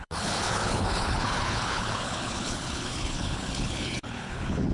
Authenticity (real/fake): fake